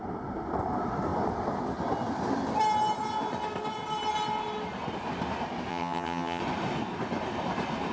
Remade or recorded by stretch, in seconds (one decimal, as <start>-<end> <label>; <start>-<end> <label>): 0.0-5.7 recorded; 5.7-6.4 remade; 6.4-7.9 recorded